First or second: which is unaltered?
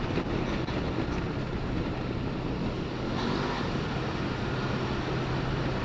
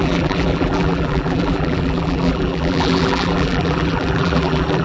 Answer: first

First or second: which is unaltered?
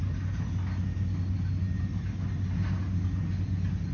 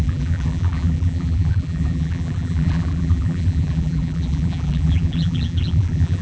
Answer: first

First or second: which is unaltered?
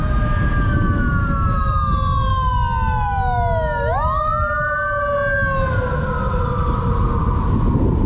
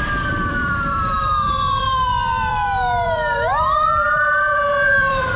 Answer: first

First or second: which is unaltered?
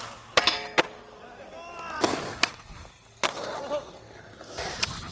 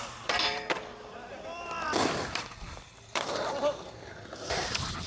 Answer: first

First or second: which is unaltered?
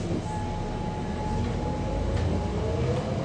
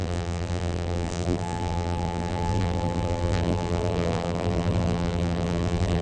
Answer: first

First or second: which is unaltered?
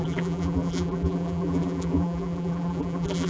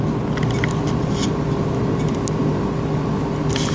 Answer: second